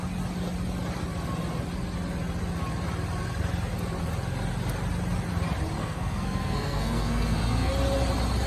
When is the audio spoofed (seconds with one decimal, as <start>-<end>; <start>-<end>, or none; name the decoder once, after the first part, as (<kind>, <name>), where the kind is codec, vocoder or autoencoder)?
5.8-7.7 (codec, SNAC)